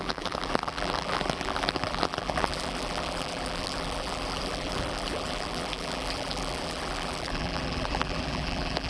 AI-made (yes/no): yes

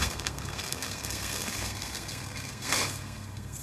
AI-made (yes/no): yes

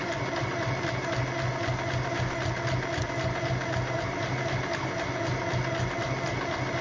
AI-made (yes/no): no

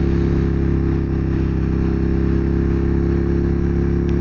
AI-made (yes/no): no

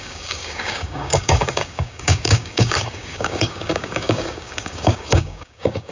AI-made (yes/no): yes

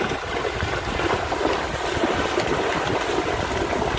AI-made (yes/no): no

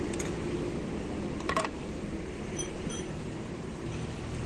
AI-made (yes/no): yes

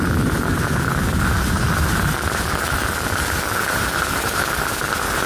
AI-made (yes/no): no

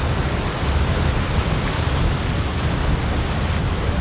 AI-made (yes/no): no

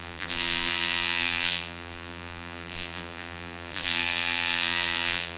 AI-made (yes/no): yes